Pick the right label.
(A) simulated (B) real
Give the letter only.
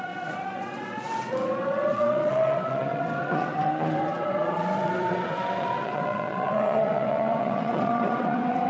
A